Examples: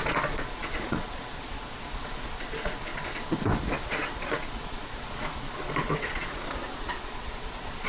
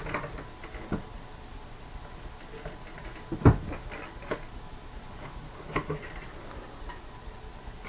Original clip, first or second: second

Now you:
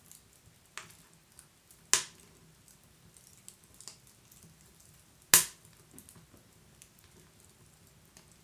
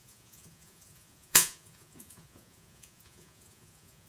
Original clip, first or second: first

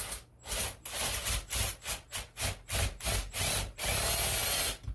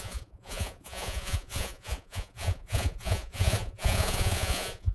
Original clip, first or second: first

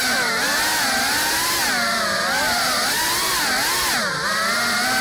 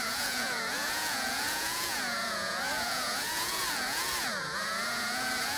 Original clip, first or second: first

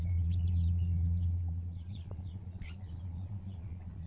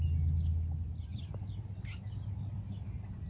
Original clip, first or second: second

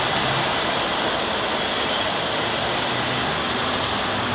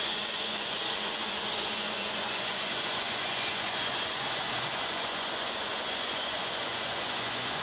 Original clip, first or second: first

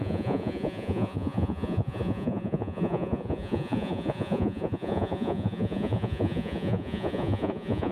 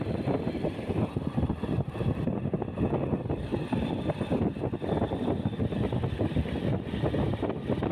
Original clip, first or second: second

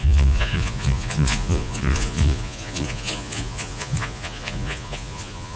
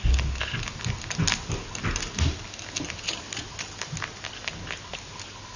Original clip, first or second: second